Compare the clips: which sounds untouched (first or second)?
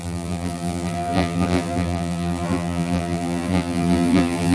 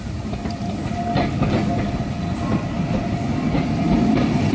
second